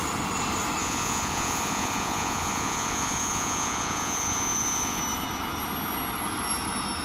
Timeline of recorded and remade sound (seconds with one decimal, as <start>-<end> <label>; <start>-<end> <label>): 0.0-0.8 recorded; 0.8-5.0 remade; 5.0-7.0 recorded